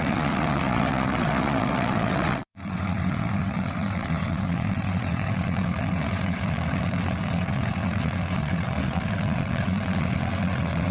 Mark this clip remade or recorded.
remade